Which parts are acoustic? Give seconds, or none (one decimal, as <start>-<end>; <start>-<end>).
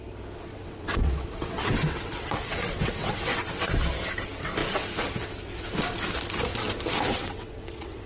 0.0-0.5; 3.7-7.1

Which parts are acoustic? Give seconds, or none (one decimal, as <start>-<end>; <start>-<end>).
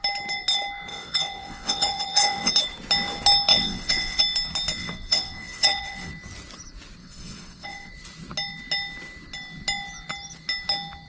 0.0-0.9; 2.5-3.5; 4.2-4.8; 6.1-7.0; 7.9-11.1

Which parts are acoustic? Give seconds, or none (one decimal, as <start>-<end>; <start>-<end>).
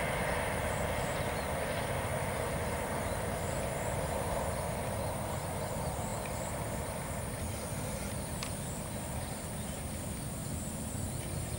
0.0-11.6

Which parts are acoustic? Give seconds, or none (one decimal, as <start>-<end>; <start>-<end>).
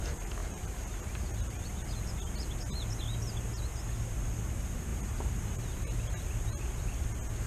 0.0-0.4; 1.6-4.9; 6.8-7.5